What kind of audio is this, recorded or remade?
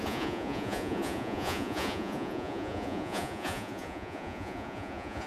remade